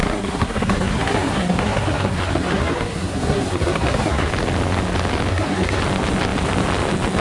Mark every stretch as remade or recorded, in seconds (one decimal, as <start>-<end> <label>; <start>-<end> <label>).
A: 0.0-4.3 remade; 4.3-5.3 recorded; 5.3-5.8 remade; 5.8-7.2 recorded